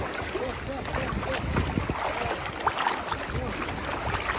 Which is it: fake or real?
real